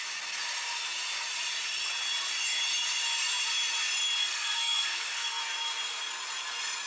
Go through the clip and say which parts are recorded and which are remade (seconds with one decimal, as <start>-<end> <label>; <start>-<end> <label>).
0.0-4.2 recorded; 4.2-5.4 remade; 5.4-6.9 recorded